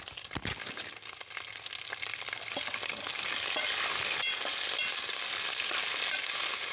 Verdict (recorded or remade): recorded